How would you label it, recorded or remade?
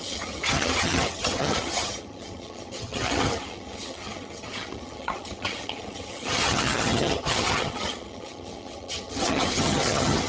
remade